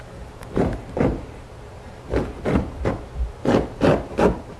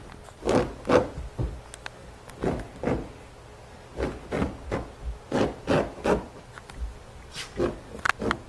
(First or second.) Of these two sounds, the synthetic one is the first